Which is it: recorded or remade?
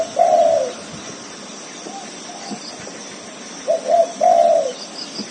recorded